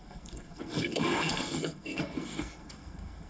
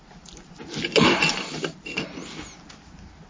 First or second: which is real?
second